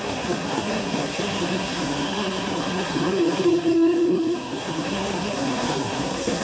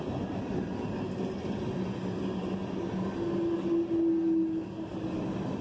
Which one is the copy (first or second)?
first